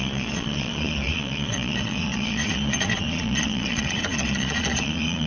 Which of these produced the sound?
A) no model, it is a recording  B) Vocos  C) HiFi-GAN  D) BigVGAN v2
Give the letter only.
B